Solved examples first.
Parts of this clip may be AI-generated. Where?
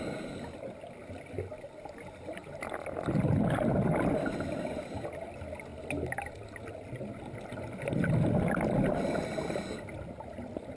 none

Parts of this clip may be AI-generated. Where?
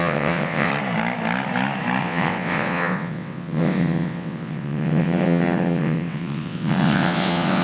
0.0-0.7; 2.0-7.6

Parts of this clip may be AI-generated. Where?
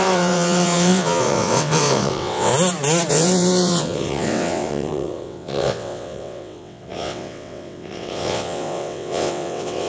0.0-2.5; 3.1-9.9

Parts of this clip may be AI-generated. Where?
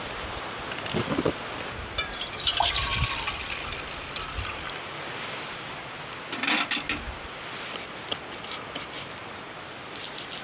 none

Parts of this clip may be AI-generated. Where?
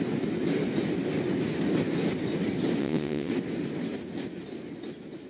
2.8-3.3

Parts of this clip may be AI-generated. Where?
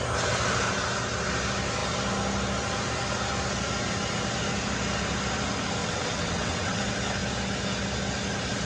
5.8-6.8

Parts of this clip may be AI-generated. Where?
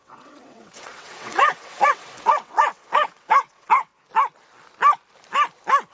0.0-3.9